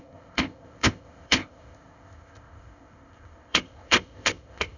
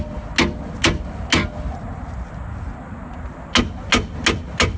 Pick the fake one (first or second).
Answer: first